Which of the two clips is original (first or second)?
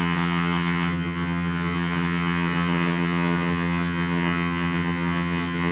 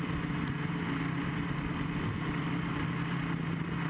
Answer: second